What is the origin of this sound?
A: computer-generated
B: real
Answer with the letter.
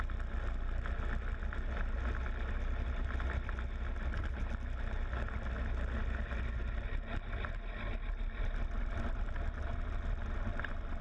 B